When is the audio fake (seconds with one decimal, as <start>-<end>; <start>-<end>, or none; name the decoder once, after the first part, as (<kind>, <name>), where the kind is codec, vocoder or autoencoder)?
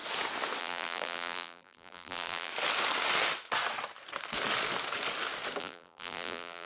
0.6-2.5 (vocoder, BigVGAN v2); 5.6-6.7